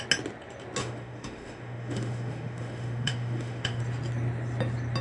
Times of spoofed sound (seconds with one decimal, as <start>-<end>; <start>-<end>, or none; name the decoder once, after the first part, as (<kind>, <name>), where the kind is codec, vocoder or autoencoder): 0.8-3.8 (autoencoder, DAC-VAE)